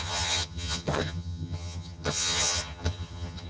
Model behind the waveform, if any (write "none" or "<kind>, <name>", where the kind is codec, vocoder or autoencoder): vocoder, HiFi-GAN